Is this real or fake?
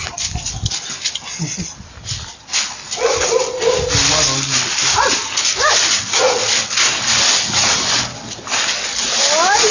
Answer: real